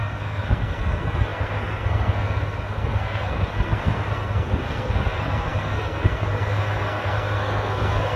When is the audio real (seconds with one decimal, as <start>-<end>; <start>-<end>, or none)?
none